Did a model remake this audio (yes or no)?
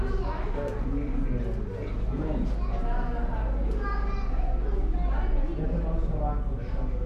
no